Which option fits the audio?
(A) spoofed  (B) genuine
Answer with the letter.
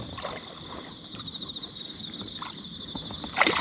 B